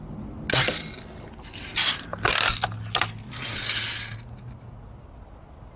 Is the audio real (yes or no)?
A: yes